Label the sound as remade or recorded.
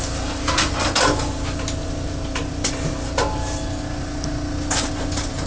recorded